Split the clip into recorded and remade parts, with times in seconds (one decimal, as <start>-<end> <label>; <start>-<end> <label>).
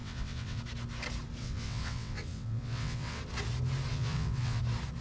0.0-0.6 remade; 0.6-1.4 recorded; 1.4-3.2 remade; 3.2-3.9 recorded; 3.9-4.6 remade; 4.6-5.0 recorded